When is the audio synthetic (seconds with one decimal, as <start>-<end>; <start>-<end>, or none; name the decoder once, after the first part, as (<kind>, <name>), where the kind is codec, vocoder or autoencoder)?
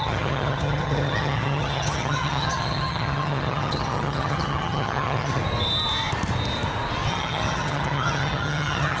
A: 0.0-5.4 (vocoder, HiFi-GAN); 7.1-9.0